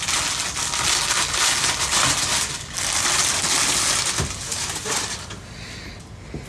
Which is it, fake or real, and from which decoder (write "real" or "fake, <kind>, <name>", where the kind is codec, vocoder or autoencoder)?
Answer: real